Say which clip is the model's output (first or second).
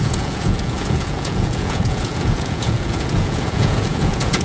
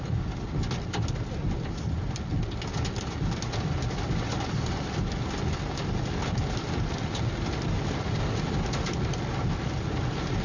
first